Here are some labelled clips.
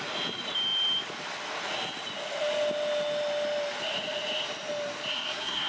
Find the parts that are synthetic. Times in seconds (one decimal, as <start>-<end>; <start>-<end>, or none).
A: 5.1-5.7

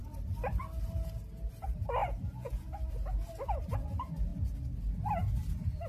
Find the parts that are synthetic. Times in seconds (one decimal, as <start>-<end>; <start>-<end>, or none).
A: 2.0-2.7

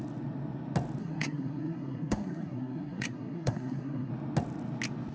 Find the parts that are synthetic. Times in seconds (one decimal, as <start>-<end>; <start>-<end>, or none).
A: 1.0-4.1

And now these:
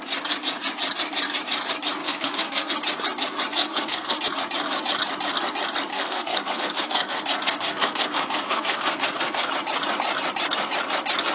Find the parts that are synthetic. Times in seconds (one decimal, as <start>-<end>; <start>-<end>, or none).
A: 2.0-2.7; 3.6-4.2; 5.9-9.5